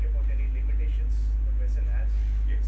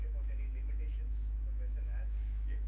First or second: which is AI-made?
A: second